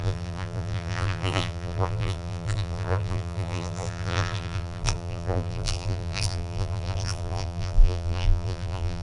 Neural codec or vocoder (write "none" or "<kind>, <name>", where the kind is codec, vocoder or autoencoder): vocoder, BigVGAN v2